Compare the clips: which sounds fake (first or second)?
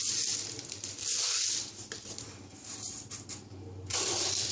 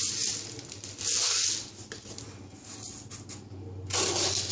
first